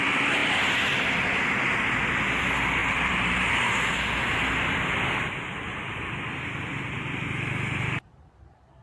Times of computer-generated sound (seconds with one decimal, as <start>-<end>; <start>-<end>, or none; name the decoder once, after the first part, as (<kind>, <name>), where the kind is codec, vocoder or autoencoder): 2.8-3.5 (vocoder, BigVGAN v2)